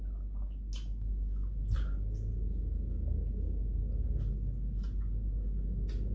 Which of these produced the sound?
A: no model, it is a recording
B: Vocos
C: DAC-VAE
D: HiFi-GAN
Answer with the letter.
A